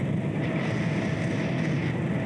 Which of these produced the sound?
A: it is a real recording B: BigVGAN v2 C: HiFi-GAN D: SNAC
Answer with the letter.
B